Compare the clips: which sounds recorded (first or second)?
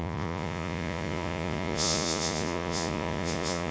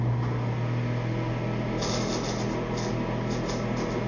second